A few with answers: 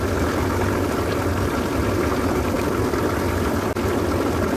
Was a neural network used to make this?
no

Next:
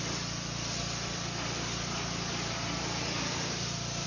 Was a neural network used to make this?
no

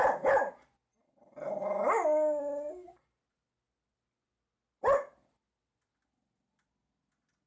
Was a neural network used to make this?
no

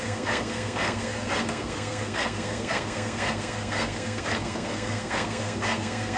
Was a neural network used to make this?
yes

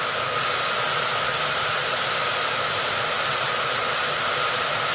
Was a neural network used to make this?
no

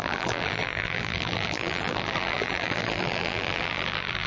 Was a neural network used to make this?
yes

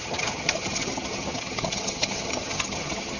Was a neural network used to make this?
yes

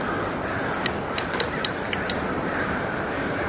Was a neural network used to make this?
yes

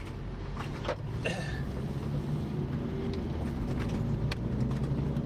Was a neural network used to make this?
no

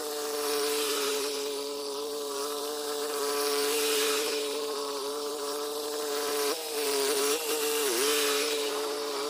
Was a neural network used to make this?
yes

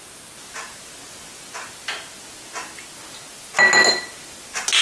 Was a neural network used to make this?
no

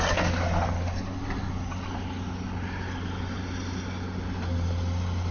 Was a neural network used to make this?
no